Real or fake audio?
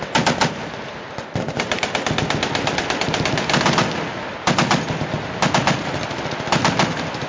real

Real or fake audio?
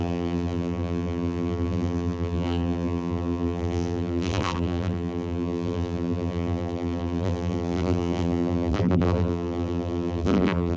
fake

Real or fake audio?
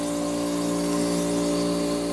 real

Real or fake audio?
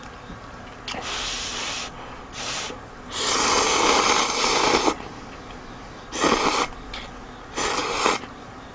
real